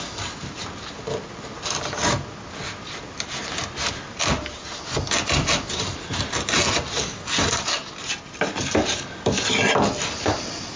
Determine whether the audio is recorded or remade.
recorded